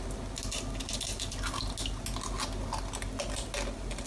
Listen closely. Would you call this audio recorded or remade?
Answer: recorded